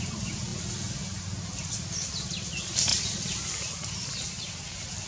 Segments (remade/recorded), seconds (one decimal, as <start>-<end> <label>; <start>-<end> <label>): 0.0-5.1 recorded